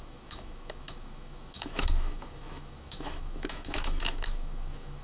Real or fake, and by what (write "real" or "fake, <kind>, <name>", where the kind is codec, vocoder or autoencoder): fake, autoencoder, DAC-VAE